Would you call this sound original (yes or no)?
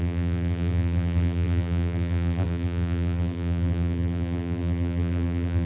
no